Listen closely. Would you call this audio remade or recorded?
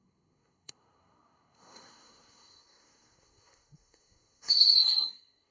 remade